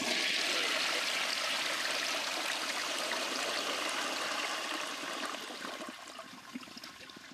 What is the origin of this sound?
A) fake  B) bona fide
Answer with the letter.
B